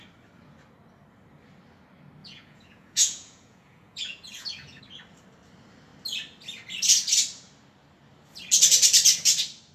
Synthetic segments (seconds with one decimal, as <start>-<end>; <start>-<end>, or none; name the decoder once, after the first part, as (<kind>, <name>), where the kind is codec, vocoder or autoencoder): 2.2-4.8 (vocoder, Vocos)